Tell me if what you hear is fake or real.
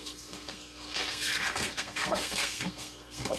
fake